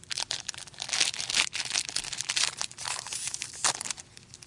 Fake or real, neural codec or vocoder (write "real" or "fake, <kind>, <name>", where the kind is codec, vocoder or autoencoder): real